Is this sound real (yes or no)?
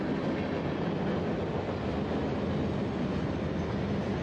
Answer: yes